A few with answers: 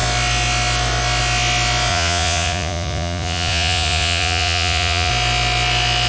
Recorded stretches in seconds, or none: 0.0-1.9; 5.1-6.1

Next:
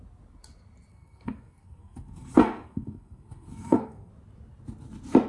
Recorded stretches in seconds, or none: 0.0-0.9; 4.1-5.3

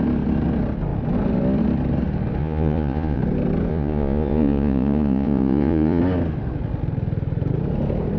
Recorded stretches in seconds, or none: 0.0-2.4; 3.2-3.7; 6.0-8.2

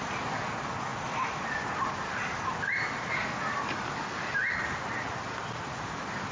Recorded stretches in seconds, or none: 0.0-6.3